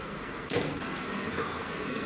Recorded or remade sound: remade